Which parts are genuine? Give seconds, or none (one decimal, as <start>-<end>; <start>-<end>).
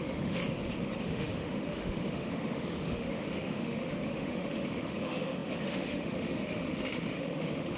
0.4-1.0